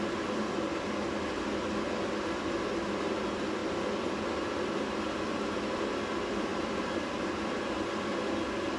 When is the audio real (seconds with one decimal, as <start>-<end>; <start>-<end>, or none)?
0.0-3.6; 4.3-6.5; 7.4-8.8